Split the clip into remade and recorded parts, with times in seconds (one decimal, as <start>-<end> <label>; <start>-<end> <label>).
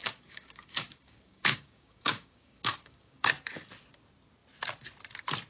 0.0-3.3 remade; 3.3-5.5 recorded